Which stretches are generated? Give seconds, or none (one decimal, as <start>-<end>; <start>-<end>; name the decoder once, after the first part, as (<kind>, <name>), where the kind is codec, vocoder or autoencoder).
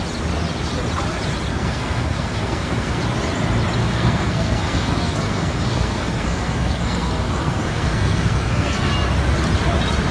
1.5-3.0 (codec, SNAC); 3.8-8.9